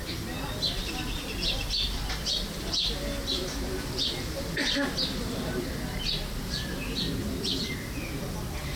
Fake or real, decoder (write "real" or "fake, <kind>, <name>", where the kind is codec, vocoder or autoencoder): real